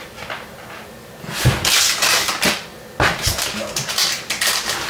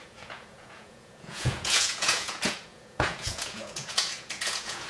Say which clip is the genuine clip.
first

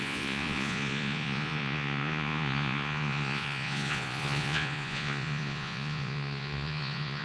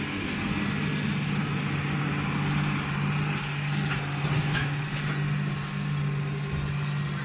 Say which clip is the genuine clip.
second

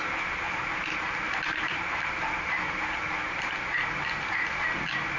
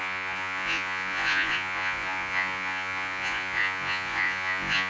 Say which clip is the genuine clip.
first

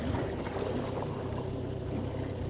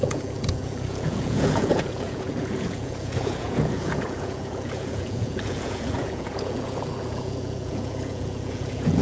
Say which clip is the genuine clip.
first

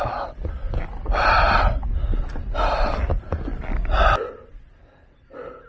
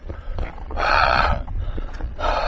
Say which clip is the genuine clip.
first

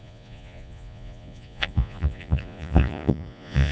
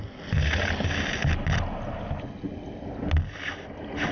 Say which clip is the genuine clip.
second